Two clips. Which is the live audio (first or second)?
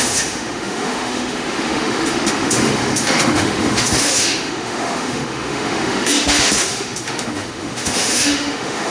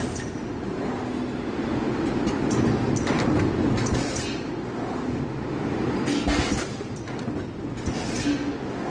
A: second